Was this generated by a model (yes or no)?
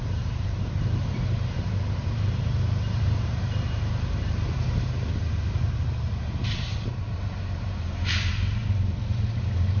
yes